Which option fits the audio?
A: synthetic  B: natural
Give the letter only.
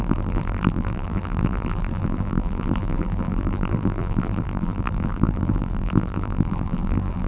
A